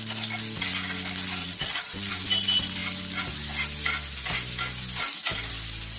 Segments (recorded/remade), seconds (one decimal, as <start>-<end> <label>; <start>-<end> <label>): 0.0-1.4 recorded; 1.4-2.1 remade; 2.1-6.0 recorded